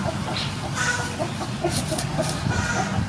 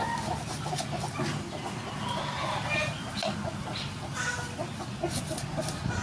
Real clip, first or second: second